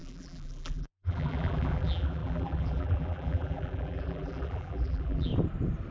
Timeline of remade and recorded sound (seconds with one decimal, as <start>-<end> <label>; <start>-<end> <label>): 0.0-5.3 remade; 5.3-5.9 recorded